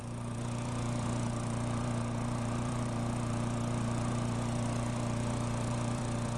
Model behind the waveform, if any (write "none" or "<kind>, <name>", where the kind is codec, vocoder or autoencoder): vocoder, BigVGAN v2